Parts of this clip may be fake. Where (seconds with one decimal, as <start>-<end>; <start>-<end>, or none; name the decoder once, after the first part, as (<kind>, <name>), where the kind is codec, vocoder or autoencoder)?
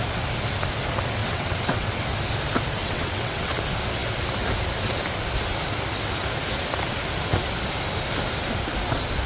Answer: 1.2-2.0 (vocoder, WaveNeXt); 2.8-3.6